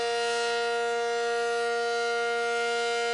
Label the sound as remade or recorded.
recorded